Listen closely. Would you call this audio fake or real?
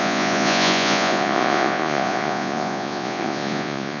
fake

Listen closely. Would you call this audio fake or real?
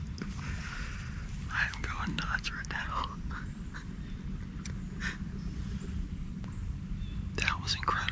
real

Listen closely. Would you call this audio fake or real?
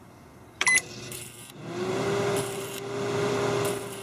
fake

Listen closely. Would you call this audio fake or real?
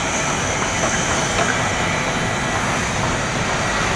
real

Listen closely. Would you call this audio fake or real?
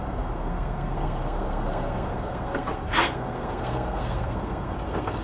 fake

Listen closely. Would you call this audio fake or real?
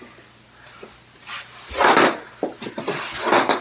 real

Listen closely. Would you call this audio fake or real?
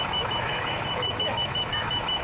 fake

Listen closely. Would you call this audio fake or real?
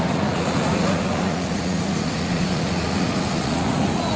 fake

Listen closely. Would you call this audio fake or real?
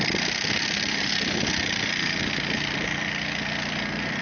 real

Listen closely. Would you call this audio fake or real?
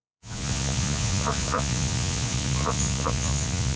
fake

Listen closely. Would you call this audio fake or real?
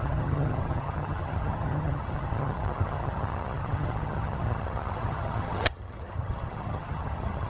fake